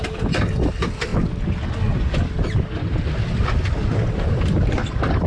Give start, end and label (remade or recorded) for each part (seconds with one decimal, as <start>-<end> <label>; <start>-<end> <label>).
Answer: 0.0-1.1 remade; 1.1-4.3 recorded; 4.3-5.3 remade

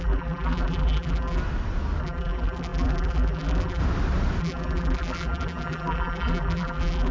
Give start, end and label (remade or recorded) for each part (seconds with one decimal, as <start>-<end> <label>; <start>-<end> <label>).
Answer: 0.0-1.4 remade; 1.4-2.0 recorded; 2.0-3.8 remade; 3.8-4.4 recorded; 4.4-7.1 remade

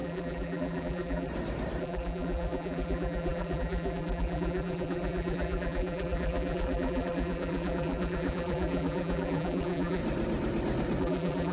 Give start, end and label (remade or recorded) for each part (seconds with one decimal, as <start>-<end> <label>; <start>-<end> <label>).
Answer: 0.0-1.3 remade; 1.3-1.8 recorded; 1.8-10.0 remade; 10.0-11.0 recorded; 11.0-11.5 remade

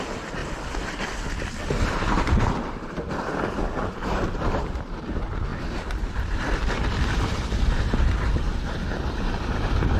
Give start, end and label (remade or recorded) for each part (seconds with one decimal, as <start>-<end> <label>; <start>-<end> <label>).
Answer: 0.0-0.4 remade; 0.4-1.8 recorded; 1.8-10.0 remade